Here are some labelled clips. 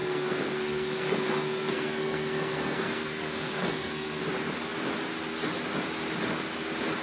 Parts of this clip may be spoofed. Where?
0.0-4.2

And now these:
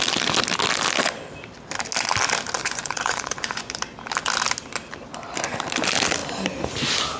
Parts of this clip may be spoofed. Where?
2.6-3.7

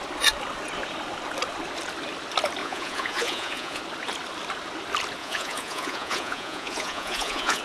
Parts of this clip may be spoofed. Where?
2.6-3.8; 5.2-7.6

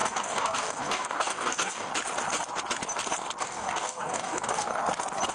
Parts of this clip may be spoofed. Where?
0.0-1.9; 3.4-4.7